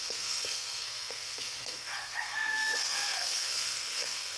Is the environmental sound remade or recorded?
remade